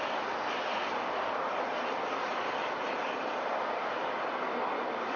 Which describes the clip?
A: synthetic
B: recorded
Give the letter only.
B